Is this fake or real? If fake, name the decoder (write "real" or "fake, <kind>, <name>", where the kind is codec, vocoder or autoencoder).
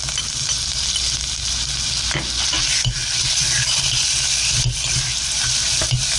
real